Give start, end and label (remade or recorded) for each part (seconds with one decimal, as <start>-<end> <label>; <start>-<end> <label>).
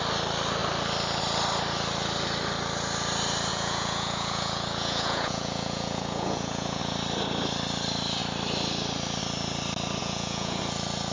0.0-3.5 recorded; 3.5-6.8 remade; 6.8-10.0 recorded; 10.0-10.6 remade; 10.6-11.1 recorded